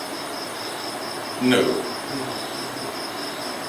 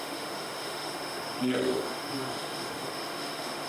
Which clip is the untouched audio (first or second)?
first